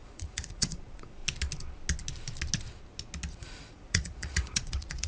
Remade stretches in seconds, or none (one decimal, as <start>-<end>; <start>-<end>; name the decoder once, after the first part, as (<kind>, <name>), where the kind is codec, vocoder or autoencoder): 0.0-1.2 (vocoder, Vocos); 3.3-5.1